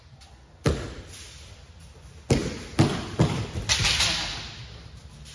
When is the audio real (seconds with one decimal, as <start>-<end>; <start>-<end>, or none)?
0.0-5.3